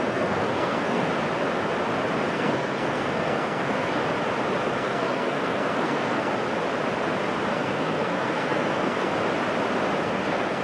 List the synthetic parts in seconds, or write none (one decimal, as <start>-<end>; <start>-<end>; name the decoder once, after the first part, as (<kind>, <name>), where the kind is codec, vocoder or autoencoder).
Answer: 0.0-1.1 (codec, SNAC); 2.2-4.0; 4.6-6.3; 7.5-9.1; 10.0-10.6

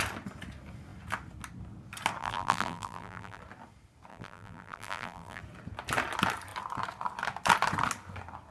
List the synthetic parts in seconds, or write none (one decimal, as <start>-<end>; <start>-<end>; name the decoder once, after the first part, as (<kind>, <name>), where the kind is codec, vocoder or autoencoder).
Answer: 2.2-3.4 (vocoder, BigVGAN v2); 4.1-5.4